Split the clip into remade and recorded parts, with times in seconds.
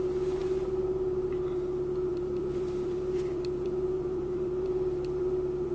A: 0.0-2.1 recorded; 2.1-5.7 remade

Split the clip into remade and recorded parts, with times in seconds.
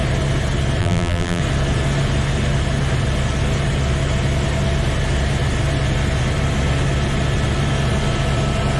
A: 0.0-0.8 recorded; 0.8-1.4 remade; 1.4-8.8 recorded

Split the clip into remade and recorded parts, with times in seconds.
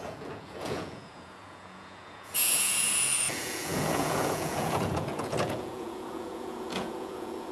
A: 0.0-7.5 remade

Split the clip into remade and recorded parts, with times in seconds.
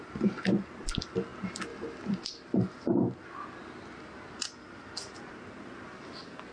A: 0.0-6.5 recorded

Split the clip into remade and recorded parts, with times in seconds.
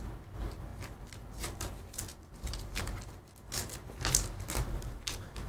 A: 0.0-5.5 recorded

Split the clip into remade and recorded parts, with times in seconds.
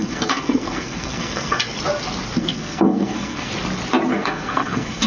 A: 0.0-1.6 remade; 1.6-2.4 recorded; 2.4-3.5 remade; 3.5-4.1 recorded; 4.1-5.1 remade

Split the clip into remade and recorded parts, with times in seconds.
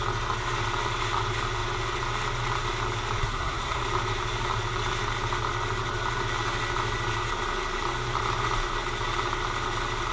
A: 0.0-3.2 recorded; 3.2-3.8 remade; 3.8-10.1 recorded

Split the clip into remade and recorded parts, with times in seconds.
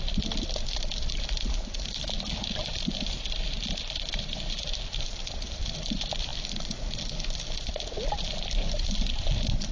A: 0.0-9.7 recorded